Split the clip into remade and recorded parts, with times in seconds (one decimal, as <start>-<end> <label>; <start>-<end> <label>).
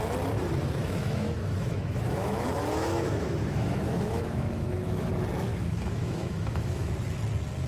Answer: 0.0-0.8 recorded; 0.8-5.1 remade; 5.1-5.5 recorded; 5.5-6.9 remade; 6.9-7.7 recorded